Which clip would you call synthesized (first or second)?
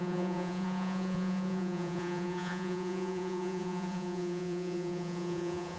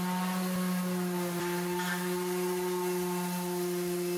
first